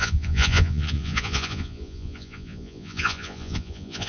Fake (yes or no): yes